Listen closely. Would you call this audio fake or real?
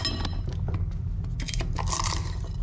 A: real